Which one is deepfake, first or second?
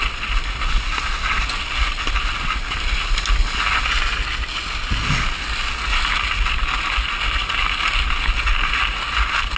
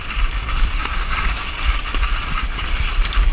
second